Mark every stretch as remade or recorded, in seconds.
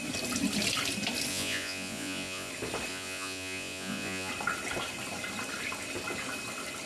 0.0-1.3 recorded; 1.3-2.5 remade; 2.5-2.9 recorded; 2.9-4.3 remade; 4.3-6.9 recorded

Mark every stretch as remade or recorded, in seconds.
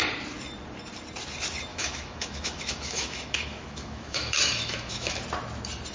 0.0-1.7 recorded; 1.7-5.2 remade; 5.2-5.9 recorded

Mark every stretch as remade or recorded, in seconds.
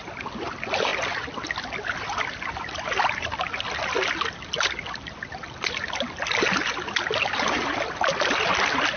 0.0-9.0 recorded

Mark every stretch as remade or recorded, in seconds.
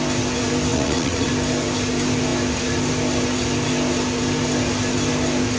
0.0-0.7 recorded; 0.7-1.3 remade; 1.3-5.6 recorded